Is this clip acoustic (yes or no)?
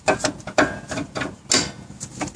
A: yes